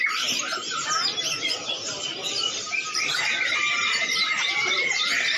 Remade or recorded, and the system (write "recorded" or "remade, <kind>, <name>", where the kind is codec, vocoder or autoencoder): remade, vocoder, BigVGAN v2